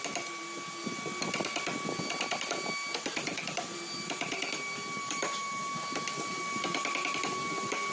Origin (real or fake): real